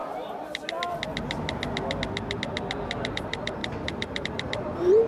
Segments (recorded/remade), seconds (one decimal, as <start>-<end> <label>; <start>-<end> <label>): 0.0-3.1 recorded; 3.1-5.1 remade